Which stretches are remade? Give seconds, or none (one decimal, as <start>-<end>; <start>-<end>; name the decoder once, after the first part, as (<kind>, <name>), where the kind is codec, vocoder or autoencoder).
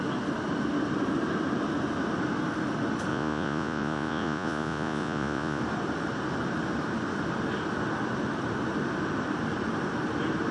3.1-5.6 (vocoder, Vocos)